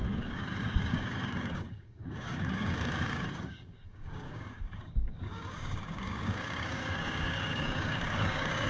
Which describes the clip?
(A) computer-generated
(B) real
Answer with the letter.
A